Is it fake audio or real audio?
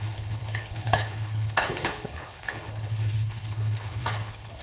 fake